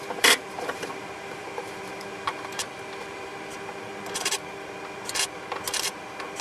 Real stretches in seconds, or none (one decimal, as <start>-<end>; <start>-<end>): 3.3-6.4